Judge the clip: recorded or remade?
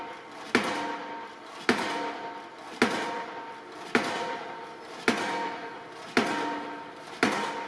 recorded